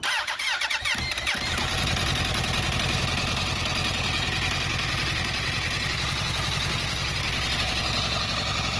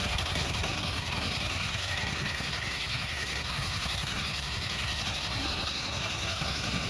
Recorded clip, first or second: first